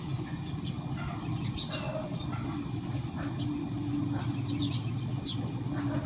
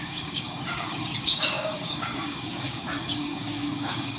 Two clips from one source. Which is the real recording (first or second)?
first